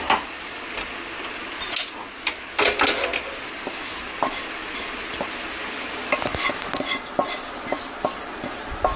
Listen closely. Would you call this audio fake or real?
real